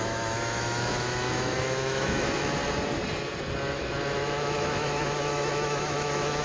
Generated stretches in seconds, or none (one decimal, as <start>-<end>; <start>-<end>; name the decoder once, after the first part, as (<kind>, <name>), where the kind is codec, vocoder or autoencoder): 0.0-2.6 (autoencoder, DAC-VAE); 3.7-6.4